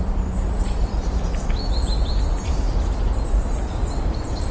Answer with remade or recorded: recorded